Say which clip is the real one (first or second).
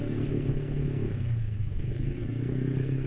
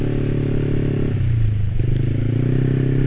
second